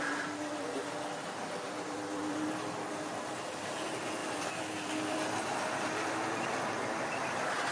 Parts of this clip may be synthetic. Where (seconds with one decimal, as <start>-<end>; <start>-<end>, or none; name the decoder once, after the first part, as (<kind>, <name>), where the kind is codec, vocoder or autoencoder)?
none

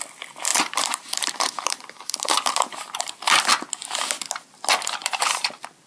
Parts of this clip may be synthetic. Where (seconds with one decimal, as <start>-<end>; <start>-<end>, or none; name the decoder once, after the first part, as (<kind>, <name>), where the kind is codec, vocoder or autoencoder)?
0.5-3.1 (vocoder, BigVGAN v2); 5.0-5.5

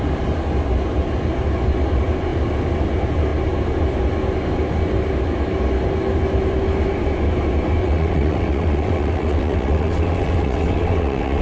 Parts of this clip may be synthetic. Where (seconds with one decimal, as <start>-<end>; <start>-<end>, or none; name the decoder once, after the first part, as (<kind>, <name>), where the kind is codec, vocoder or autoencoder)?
7.8-11.4 (vocoder, WaveNeXt)

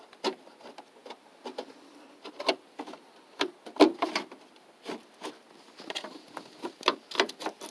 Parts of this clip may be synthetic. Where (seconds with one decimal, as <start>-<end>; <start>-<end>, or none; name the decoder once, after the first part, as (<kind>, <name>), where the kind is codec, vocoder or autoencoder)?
none